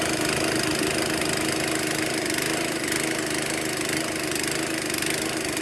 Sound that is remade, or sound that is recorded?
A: recorded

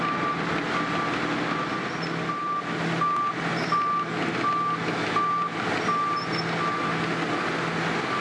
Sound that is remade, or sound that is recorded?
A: recorded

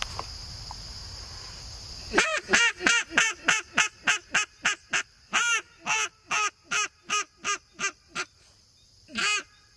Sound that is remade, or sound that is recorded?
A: recorded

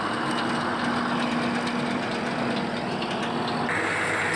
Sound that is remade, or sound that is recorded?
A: recorded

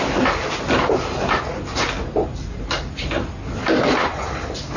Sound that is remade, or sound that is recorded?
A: recorded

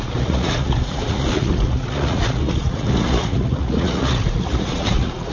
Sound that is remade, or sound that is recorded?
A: remade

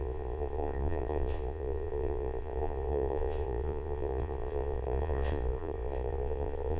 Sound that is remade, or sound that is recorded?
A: remade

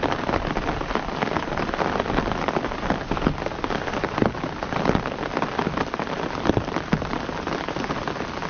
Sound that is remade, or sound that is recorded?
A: recorded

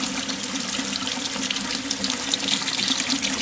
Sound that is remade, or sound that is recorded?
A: recorded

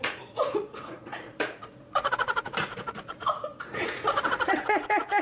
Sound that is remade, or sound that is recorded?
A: remade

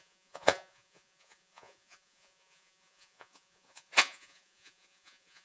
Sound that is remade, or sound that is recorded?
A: remade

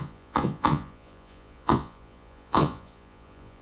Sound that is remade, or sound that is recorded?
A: remade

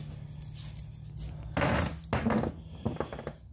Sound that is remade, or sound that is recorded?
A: recorded